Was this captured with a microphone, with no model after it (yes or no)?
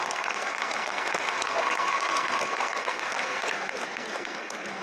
no